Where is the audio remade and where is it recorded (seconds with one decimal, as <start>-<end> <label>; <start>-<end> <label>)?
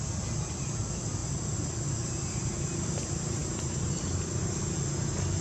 0.0-5.4 recorded